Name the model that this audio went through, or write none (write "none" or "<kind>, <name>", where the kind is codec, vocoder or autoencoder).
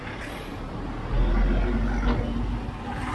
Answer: none